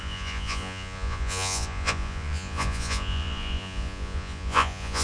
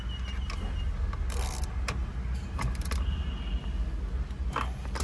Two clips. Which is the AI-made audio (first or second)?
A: first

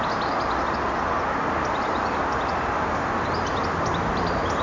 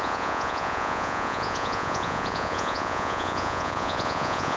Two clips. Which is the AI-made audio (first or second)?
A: second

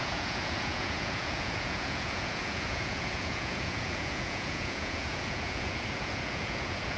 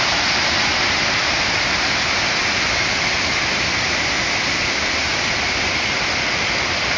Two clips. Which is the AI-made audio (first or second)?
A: first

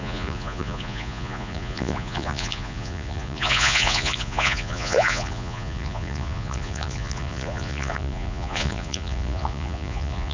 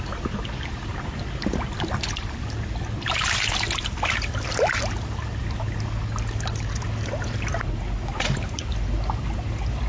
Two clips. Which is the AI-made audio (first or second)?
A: first